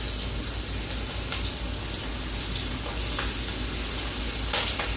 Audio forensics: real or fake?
real